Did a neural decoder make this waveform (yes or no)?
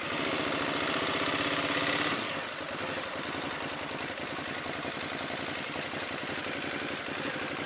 no